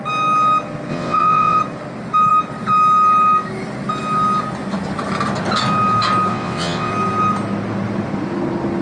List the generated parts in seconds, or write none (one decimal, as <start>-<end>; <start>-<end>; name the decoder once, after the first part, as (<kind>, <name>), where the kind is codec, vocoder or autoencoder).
0.9-1.6 (vocoder, WaveNeXt); 6.3-6.9